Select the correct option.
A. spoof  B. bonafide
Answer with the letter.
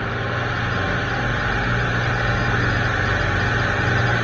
B